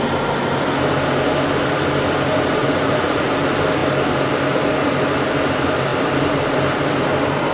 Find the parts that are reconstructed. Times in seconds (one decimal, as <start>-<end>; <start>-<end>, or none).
2.6-3.3